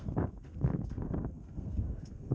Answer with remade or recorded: remade